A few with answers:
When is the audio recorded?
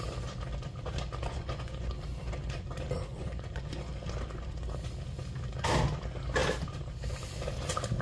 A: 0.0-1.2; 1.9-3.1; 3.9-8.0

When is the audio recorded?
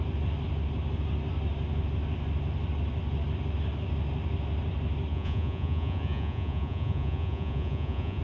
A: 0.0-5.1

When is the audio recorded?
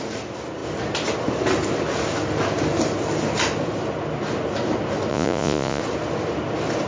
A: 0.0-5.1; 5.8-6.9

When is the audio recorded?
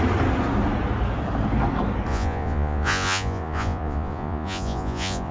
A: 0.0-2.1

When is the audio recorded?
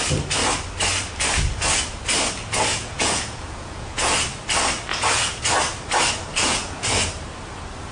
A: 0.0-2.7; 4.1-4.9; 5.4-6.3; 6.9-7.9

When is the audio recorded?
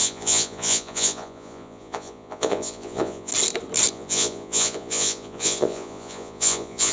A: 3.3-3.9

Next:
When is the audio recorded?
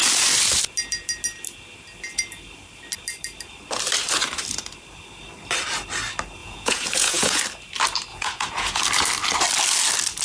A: 0.0-6.4; 7.4-8.1; 8.8-10.2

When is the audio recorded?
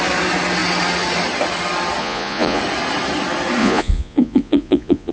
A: 0.0-2.0; 2.6-3.6